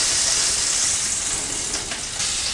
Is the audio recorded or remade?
recorded